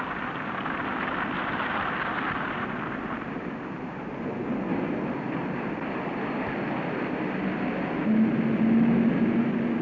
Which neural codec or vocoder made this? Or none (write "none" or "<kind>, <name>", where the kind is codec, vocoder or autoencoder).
none